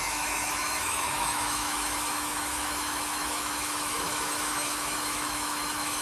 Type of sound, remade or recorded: remade